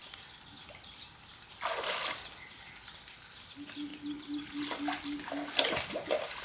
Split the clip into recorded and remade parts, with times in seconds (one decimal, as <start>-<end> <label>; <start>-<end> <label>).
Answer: 0.0-6.4 recorded